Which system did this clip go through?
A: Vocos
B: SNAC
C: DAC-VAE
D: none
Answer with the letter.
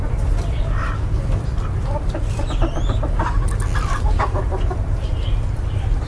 D